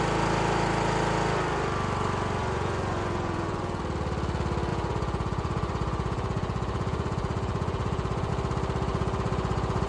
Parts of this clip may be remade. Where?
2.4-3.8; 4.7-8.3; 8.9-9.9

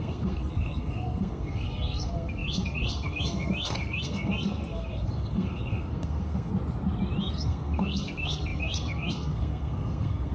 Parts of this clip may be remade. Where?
0.0-6.5; 7.2-10.3

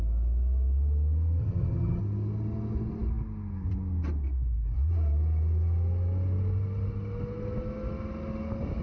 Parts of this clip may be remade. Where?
1.4-2.0

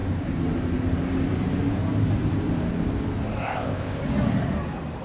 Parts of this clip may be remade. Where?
3.4-4.0

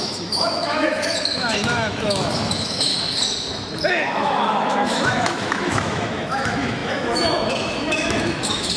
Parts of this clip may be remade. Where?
0.0-2.9; 3.9-8.8

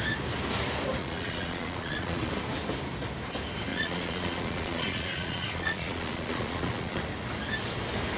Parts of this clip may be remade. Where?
1.0-2.3; 3.7-7.0